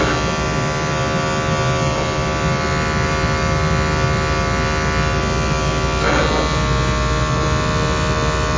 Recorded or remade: recorded